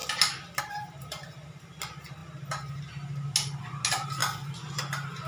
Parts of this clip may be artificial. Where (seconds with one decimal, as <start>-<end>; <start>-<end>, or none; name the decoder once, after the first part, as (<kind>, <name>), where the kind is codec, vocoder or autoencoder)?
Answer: 4.2-4.8 (vocoder, BigVGAN v2)